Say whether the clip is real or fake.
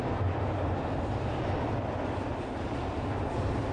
real